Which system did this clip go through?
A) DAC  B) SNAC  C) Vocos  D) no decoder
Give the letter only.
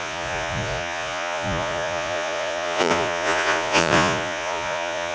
C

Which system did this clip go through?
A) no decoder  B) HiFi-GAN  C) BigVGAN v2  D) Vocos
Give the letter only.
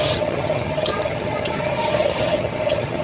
B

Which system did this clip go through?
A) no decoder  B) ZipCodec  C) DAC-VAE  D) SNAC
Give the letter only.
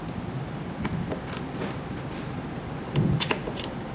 A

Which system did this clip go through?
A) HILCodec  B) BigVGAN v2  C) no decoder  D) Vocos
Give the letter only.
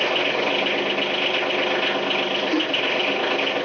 C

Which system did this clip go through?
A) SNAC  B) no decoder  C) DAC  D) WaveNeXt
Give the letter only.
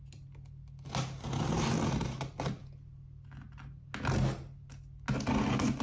B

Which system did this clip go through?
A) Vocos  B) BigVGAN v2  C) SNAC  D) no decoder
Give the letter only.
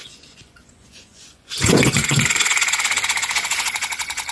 A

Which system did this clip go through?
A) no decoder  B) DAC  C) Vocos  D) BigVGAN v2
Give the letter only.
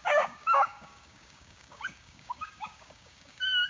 B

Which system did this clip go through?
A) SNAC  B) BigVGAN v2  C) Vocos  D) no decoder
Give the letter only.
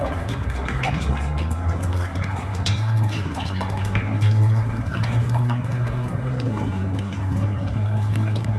A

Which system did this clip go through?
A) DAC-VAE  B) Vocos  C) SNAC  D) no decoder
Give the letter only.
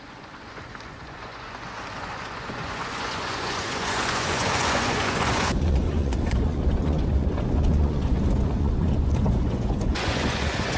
B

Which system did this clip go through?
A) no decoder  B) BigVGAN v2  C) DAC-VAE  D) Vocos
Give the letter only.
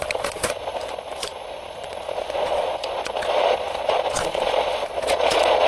D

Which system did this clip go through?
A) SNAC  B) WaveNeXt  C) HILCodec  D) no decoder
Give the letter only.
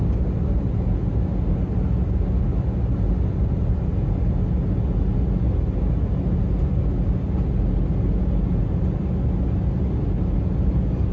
D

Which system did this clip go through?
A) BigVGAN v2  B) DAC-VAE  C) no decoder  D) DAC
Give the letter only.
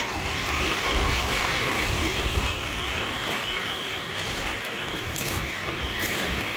D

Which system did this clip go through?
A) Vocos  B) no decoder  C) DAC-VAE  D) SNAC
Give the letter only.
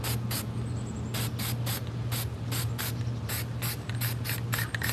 B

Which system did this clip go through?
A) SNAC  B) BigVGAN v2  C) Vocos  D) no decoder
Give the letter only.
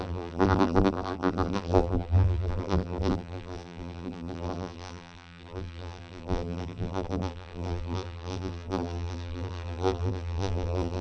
B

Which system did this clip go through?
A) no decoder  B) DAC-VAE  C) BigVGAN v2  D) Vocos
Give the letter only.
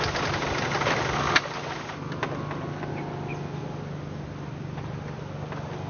A